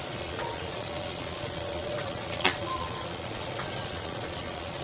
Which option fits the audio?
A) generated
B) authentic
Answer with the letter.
A